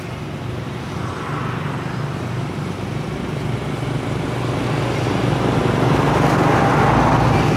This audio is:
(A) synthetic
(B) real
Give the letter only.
B